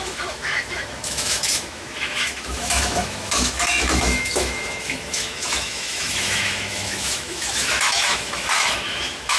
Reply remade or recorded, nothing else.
remade